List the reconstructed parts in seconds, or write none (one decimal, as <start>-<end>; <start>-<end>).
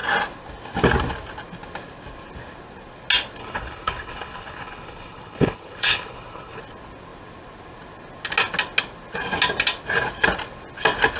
3.4-6.6